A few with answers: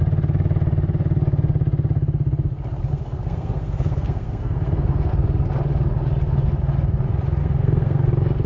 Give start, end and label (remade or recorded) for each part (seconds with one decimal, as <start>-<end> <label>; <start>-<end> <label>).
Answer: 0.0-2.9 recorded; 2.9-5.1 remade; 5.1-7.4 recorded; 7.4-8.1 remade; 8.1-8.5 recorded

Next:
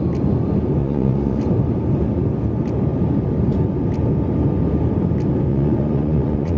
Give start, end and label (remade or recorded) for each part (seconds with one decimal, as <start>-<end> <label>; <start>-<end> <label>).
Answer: 0.0-0.8 recorded; 0.8-1.4 remade; 1.4-5.5 recorded; 5.5-6.6 remade

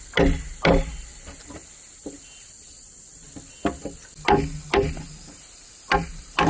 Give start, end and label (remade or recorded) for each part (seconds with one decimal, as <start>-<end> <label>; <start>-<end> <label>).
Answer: 0.0-6.5 recorded